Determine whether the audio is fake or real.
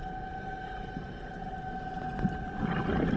real